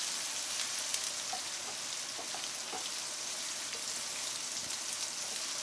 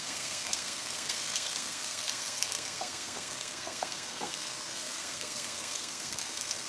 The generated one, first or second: second